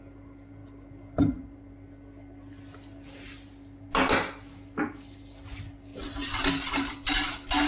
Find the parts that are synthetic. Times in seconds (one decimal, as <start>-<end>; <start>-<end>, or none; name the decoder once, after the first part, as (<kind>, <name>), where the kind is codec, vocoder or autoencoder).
none